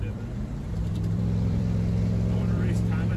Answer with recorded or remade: remade